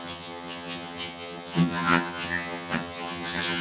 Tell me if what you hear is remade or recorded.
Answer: remade